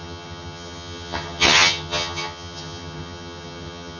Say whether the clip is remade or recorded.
remade